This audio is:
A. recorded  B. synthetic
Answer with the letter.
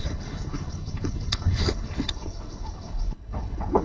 B